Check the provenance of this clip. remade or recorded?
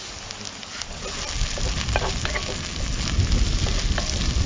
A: recorded